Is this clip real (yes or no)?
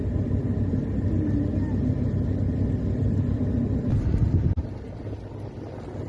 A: yes